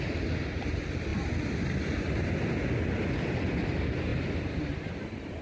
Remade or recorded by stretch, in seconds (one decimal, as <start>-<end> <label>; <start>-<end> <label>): 0.0-5.4 recorded